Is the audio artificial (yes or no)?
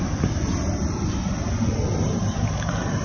no